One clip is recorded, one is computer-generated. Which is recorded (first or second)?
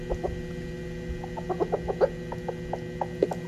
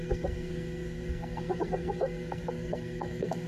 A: first